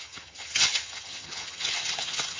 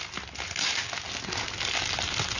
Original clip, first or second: second